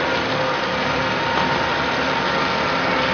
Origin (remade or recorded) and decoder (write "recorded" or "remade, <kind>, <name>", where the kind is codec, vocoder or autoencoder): recorded